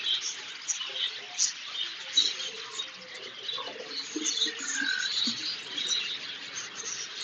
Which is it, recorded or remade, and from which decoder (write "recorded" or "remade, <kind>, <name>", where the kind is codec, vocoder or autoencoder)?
recorded